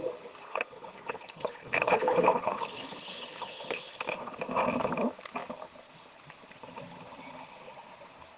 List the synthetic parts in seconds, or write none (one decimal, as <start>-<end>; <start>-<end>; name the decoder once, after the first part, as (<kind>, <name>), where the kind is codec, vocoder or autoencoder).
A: 0.4-4.4 (codec, HILCodec)